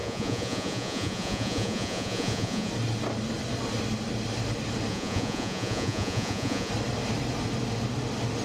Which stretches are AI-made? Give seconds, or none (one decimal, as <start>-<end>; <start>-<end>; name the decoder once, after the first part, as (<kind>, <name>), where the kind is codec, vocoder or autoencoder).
0.0-2.7 (vocoder, Vocos); 4.9-6.7